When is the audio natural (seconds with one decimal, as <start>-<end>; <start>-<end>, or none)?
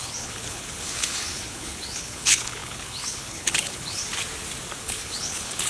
4.0-4.8